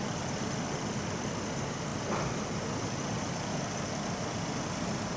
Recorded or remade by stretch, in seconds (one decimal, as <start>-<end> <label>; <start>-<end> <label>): 0.0-5.2 recorded